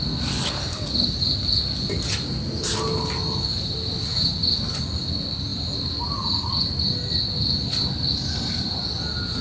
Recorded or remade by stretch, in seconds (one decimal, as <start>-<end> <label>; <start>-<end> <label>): 0.0-9.4 recorded